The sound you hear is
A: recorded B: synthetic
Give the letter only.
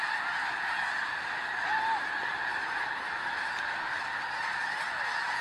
A